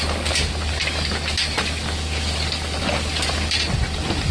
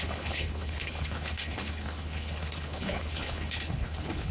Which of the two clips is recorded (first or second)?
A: first